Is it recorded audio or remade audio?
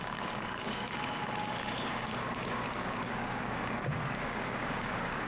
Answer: remade